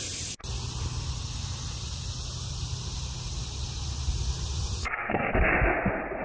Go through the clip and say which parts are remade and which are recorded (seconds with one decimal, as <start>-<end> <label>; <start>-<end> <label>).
0.0-4.8 recorded; 4.8-5.3 remade; 5.3-6.2 recorded